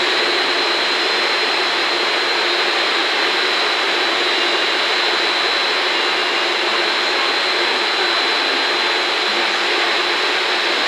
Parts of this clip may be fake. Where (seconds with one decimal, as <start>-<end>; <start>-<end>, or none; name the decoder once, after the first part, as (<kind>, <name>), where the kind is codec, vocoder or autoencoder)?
3.0-4.2 (vocoder, BigVGAN v2)